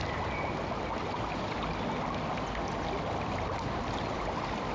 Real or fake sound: real